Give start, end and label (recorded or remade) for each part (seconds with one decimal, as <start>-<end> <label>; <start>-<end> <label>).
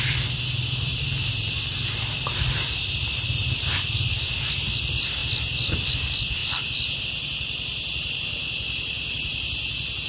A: 0.0-10.1 recorded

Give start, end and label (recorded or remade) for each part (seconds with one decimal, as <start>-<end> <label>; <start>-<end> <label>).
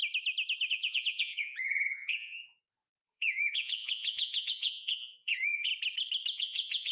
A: 0.0-0.7 recorded; 0.7-5.7 remade; 5.7-6.3 recorded; 6.3-6.9 remade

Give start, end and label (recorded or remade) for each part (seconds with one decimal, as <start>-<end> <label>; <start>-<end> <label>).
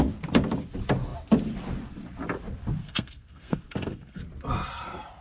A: 0.0-2.8 recorded; 2.8-4.2 remade; 4.2-5.2 recorded